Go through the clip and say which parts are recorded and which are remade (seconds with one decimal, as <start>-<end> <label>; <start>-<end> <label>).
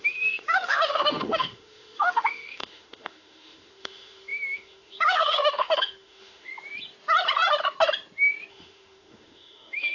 0.0-6.5 remade; 6.5-8.5 recorded; 8.5-9.9 remade